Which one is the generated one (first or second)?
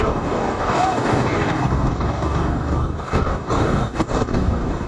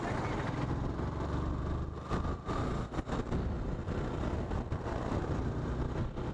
first